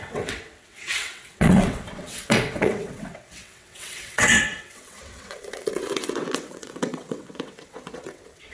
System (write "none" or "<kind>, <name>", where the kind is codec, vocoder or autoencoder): vocoder, WaveNeXt